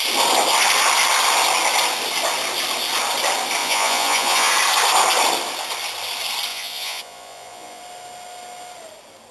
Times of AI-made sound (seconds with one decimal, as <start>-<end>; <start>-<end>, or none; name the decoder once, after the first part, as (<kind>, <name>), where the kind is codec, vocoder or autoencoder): 3.6-4.5 (vocoder, Vocos); 6.5-7.8